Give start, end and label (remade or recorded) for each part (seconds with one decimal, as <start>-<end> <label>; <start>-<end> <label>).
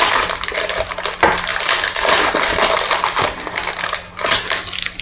0.0-5.0 recorded